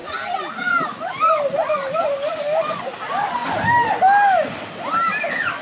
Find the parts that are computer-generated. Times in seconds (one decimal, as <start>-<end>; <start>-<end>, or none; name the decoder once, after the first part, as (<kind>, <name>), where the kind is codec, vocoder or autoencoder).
none